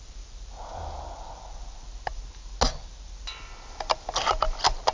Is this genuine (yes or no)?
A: yes